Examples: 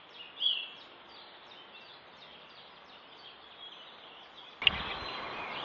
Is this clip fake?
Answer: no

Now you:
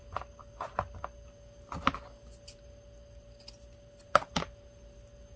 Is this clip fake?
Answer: no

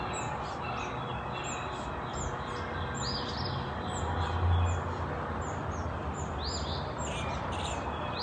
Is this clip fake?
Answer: no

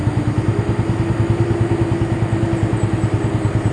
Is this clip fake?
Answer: no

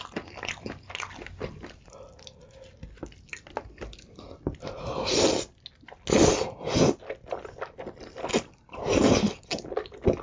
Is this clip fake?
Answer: no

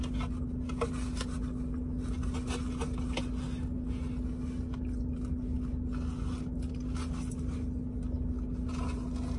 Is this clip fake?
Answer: no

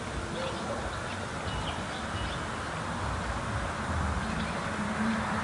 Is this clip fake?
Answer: no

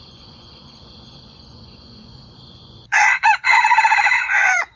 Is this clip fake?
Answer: yes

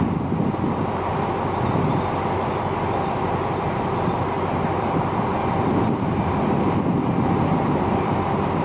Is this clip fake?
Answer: no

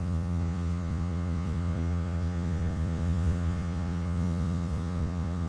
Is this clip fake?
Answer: yes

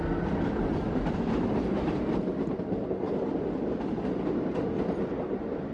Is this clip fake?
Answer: no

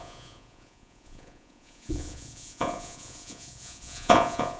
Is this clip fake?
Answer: yes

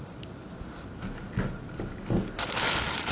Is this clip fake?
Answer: no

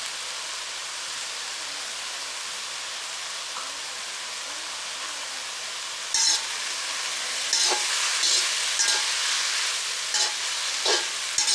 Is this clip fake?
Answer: no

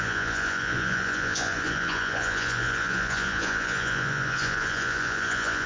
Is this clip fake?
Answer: yes